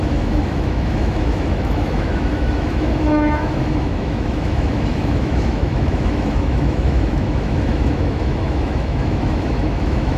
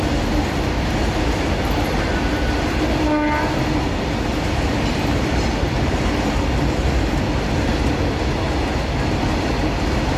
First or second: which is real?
second